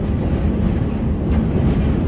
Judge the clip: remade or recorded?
recorded